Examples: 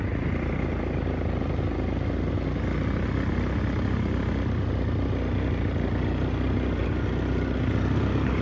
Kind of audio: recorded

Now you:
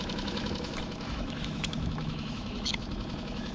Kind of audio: remade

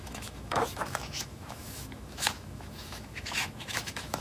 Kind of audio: remade